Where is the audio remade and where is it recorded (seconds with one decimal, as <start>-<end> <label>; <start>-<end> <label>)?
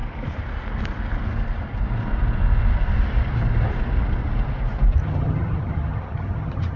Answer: 0.0-5.0 recorded; 5.0-6.8 remade